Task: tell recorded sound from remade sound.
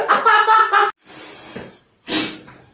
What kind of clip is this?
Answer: recorded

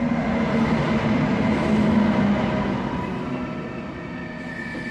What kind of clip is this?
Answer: recorded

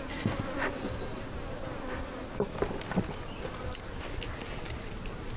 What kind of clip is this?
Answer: recorded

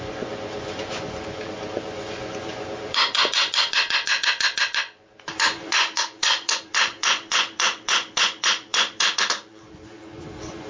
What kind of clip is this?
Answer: remade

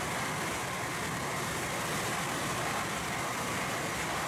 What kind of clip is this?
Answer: recorded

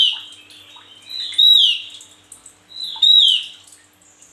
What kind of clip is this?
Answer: recorded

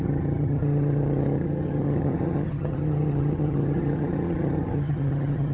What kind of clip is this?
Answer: remade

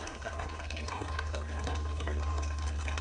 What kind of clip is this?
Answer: remade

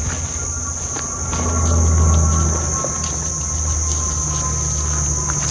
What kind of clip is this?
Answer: recorded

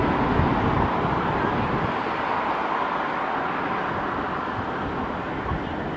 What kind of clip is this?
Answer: recorded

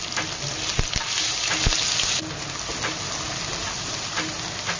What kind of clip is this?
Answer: recorded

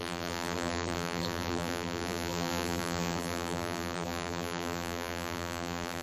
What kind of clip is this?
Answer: remade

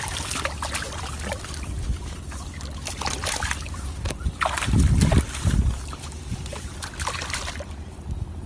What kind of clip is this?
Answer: recorded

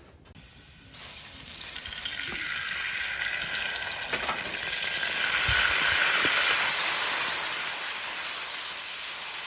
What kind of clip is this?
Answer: recorded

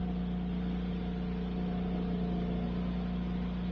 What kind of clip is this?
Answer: recorded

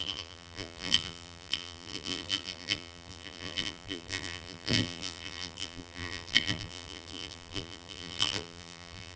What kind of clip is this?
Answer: remade